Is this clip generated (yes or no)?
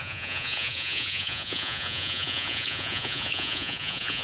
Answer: yes